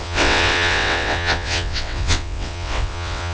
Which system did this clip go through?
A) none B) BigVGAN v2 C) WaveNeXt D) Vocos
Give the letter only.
C